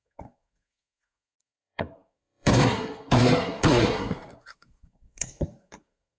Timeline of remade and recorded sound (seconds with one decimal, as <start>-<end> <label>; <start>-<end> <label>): 0.0-6.2 remade